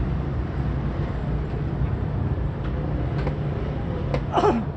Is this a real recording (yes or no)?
yes